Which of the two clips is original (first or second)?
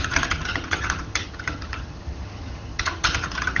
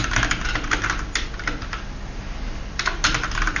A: second